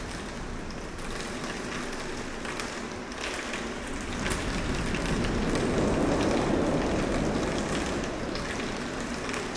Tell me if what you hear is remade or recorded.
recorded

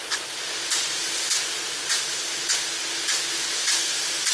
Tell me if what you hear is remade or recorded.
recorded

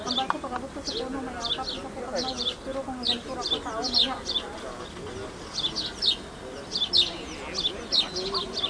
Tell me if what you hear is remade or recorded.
recorded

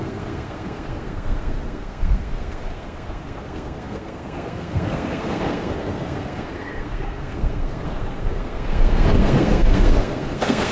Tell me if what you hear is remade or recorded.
remade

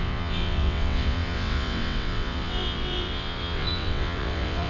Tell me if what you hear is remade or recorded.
remade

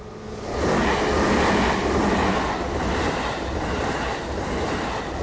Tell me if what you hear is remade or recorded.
recorded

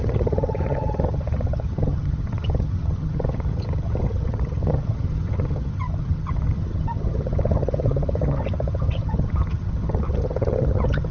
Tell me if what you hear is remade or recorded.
remade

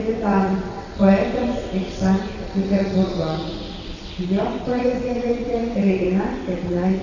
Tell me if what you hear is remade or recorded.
remade